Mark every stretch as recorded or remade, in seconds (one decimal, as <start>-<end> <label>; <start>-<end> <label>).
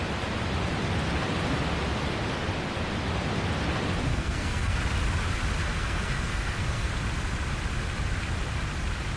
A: 0.0-4.1 recorded; 4.1-4.8 remade; 4.8-5.6 recorded; 5.6-6.9 remade; 6.9-9.2 recorded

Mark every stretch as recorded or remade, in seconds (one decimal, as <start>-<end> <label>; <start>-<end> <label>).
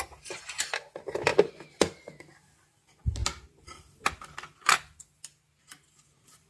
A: 0.0-6.5 recorded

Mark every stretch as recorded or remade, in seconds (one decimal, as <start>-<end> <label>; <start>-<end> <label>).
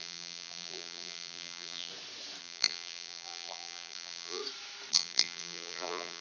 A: 0.0-1.9 remade; 1.9-2.4 recorded; 2.4-4.4 remade; 4.4-4.9 recorded; 4.9-6.2 remade